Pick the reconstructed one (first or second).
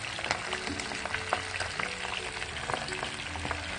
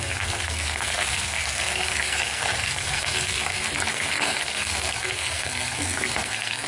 second